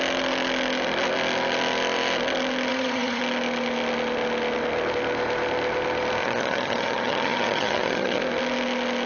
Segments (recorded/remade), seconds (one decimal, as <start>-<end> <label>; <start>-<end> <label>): 0.0-2.7 recorded; 2.7-3.2 remade; 3.2-6.2 recorded; 6.2-8.2 remade; 8.2-9.1 recorded